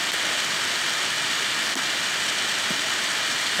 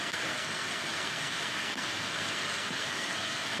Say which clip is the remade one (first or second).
second